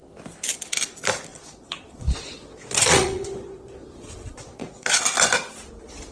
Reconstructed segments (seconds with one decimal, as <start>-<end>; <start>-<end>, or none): 1.3-5.0